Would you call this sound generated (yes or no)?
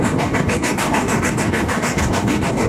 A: yes